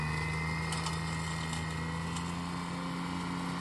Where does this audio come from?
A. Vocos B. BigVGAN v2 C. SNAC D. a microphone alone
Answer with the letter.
D